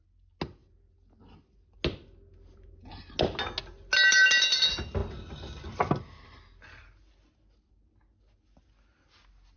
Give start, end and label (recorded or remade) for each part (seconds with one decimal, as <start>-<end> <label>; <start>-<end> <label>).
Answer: 0.0-9.6 recorded